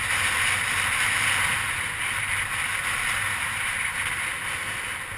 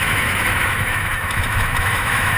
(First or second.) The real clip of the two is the first